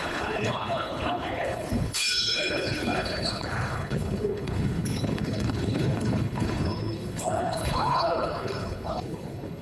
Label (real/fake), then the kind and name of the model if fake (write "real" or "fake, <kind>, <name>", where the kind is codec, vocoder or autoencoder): fake, codec, HILCodec